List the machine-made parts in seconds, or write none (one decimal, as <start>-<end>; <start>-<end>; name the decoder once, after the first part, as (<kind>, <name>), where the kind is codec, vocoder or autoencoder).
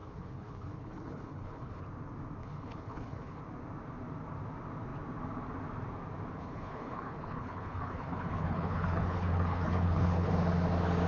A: 0.0-1.8 (codec, HILCodec); 2.4-3.4; 6.4-10.3